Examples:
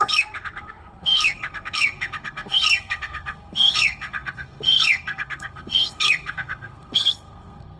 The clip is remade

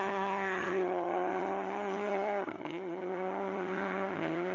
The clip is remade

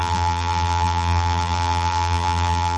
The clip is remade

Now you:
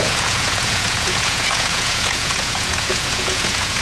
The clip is remade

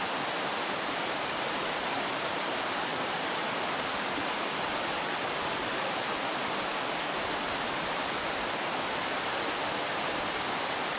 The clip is remade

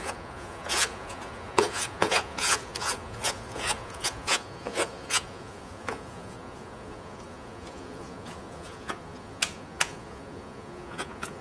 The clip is remade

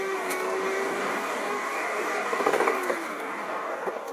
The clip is remade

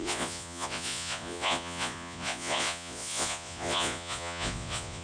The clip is remade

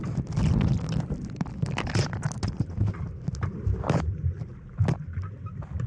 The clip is recorded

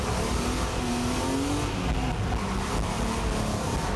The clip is recorded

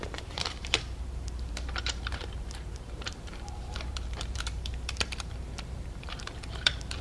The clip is remade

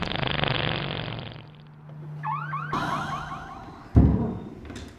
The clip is recorded